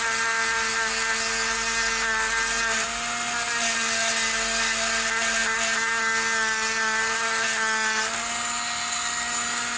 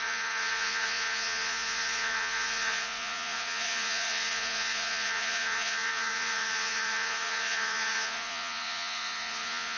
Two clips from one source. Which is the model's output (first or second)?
second